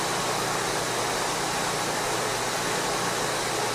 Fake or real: real